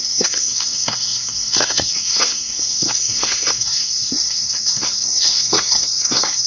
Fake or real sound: fake